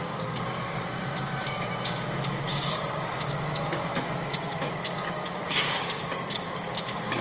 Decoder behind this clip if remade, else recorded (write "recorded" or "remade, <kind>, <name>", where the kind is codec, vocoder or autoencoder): remade, codec, DAC